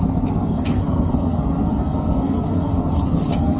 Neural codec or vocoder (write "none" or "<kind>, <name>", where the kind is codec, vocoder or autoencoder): codec, SNAC